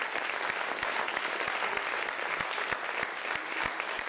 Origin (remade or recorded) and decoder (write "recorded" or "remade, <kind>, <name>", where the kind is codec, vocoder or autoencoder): recorded